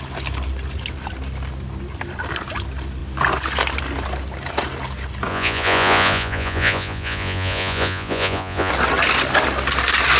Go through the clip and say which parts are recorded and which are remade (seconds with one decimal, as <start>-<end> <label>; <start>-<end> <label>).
0.0-5.3 recorded; 5.3-8.7 remade; 8.7-10.2 recorded